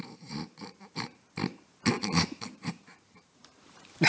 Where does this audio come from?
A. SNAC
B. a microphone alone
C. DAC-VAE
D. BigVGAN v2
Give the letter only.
D